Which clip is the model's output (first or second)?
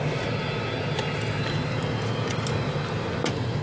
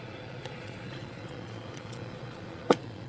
second